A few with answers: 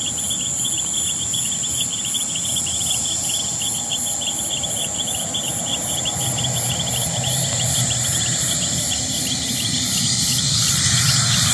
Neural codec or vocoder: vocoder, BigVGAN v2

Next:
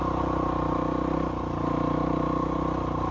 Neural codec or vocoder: none